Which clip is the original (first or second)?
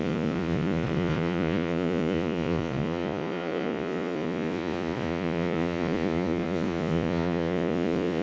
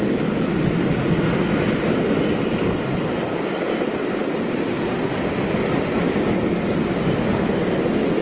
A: second